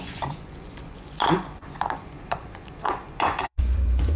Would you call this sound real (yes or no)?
no